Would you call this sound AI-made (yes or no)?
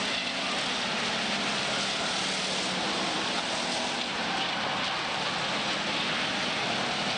no